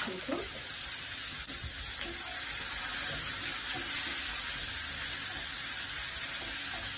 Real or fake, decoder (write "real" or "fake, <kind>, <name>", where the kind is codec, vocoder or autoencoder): real